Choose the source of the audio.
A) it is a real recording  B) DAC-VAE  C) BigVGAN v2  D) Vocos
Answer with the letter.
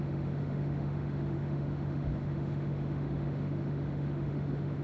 B